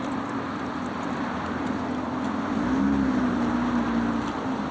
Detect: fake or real real